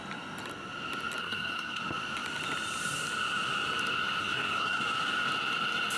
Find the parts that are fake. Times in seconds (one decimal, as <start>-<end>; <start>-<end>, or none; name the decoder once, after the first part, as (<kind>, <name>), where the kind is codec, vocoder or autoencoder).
1.2-1.8 (codec, SNAC); 4.2-4.8